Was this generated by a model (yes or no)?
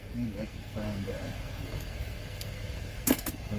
yes